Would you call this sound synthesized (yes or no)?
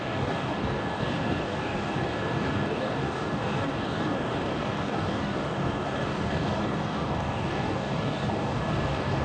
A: yes